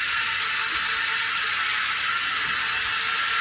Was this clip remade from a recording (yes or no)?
no